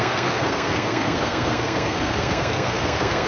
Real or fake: fake